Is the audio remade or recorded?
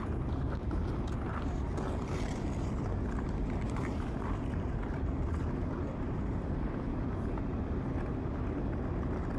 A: recorded